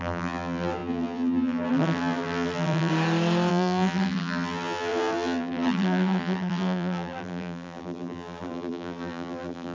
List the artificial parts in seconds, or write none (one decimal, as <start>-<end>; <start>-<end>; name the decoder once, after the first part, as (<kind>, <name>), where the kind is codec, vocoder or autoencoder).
0.0-2.9 (vocoder, BigVGAN v2); 3.5-9.7